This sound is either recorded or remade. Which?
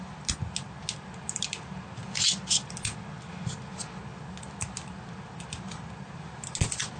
recorded